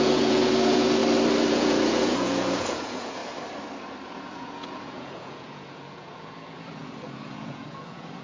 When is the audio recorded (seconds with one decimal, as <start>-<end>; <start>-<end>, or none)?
1.0-1.5; 3.2-4.1